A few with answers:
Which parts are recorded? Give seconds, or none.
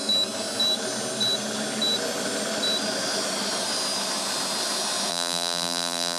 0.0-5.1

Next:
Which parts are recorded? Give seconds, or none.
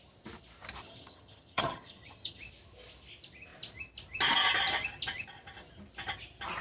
0.0-0.8; 2.4-6.6